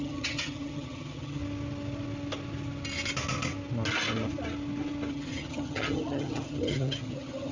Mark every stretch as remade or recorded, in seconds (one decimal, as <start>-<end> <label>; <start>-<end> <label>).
0.0-1.4 remade; 1.4-5.1 recorded; 5.1-7.5 remade

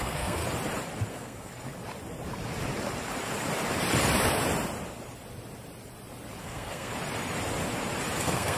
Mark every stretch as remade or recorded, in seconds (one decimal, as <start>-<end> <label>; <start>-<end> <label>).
0.0-0.4 remade; 0.4-1.1 recorded; 1.1-1.5 remade; 1.5-6.4 recorded; 6.4-6.9 remade; 6.9-8.2 recorded; 8.2-8.6 remade

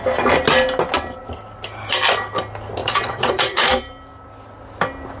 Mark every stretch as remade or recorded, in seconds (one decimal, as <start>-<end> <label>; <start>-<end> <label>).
0.0-2.8 recorded; 2.8-3.7 remade; 3.7-5.2 recorded